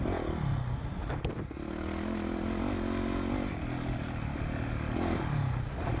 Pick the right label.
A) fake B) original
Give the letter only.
B